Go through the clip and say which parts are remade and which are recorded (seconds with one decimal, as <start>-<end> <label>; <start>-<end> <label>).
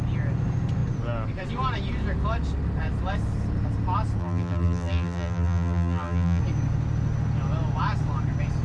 0.0-4.2 recorded; 4.2-6.4 remade; 6.4-8.6 recorded